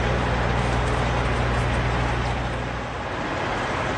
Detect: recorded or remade recorded